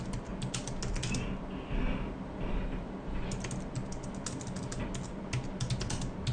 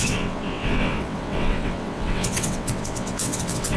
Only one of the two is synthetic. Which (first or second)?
second